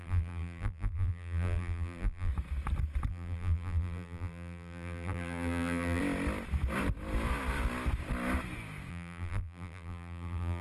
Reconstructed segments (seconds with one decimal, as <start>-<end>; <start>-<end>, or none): 0.0-2.3; 3.1-6.0; 8.9-10.6